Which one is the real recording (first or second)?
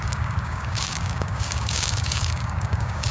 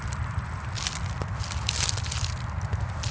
second